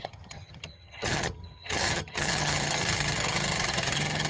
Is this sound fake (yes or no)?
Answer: yes